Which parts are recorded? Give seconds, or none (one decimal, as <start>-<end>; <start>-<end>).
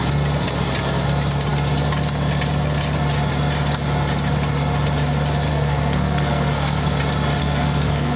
0.0-5.5; 7.0-7.4